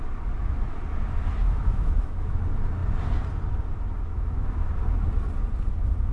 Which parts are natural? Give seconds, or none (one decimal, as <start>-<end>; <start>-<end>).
0.0-1.4; 2.4-4.1; 4.7-6.1